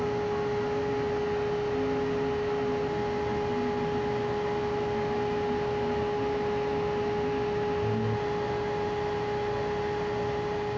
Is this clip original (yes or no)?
yes